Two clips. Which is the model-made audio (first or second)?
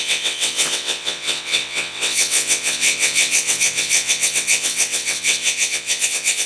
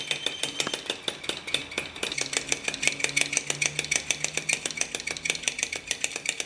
first